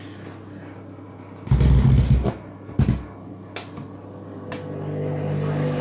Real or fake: real